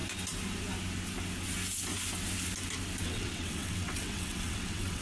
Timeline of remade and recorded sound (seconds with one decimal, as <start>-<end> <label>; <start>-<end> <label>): 0.0-3.0 recorded; 3.0-5.0 remade